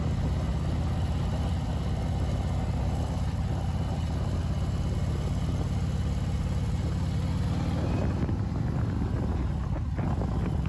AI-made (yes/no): no